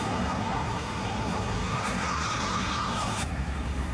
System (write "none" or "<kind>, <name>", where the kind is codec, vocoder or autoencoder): codec, SNAC